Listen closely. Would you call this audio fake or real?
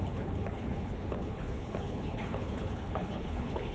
fake